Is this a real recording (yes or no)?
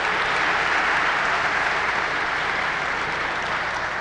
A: yes